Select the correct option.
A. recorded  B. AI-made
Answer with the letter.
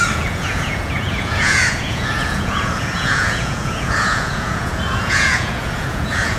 B